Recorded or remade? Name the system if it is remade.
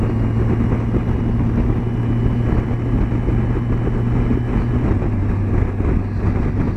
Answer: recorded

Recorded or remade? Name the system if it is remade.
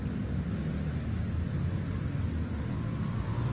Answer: recorded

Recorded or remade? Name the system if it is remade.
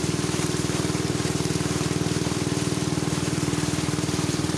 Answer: remade, vocoder, BigVGAN v2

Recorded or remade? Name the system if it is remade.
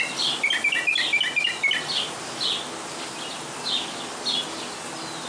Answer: recorded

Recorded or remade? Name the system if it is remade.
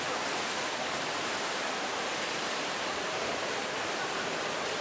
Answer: remade, vocoder, BigVGAN v2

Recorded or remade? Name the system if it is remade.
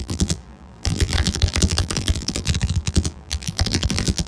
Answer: remade, vocoder, BigVGAN v2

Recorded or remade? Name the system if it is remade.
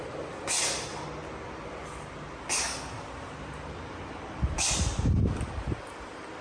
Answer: recorded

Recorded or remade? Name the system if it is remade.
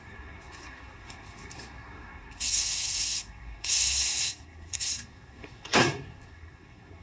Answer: remade, codec, SNAC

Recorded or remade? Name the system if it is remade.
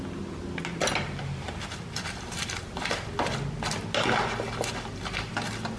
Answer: recorded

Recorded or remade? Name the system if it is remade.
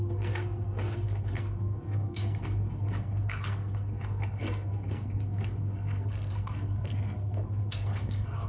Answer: remade, codec, SNAC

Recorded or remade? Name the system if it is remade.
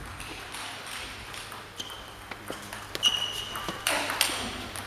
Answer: recorded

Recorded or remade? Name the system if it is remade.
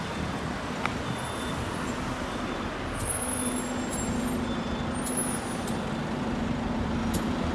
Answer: recorded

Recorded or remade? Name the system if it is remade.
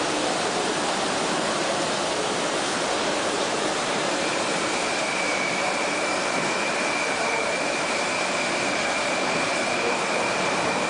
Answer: remade, vocoder, BigVGAN v2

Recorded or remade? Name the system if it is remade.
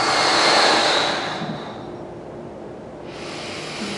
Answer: recorded